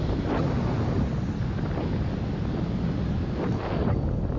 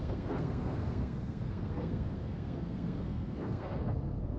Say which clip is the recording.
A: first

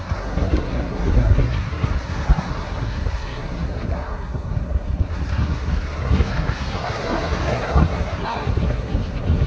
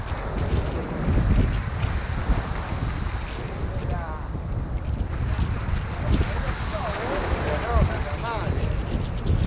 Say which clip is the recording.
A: second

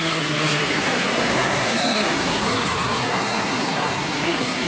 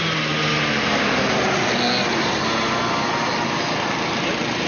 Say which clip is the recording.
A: second